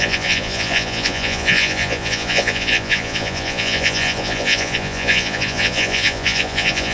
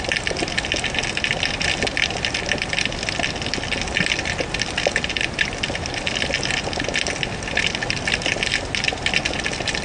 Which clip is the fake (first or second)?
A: first